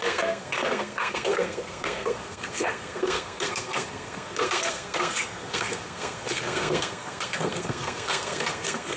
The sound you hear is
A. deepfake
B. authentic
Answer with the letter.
A